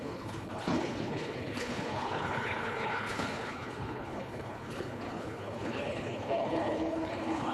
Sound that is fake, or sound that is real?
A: fake